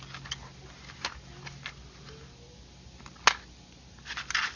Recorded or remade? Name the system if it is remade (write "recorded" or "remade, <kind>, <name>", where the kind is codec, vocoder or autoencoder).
recorded